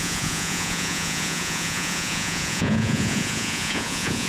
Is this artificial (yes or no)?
yes